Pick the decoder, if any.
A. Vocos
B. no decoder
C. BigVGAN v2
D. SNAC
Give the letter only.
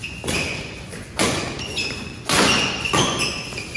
A